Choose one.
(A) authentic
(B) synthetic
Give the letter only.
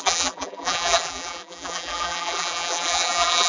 B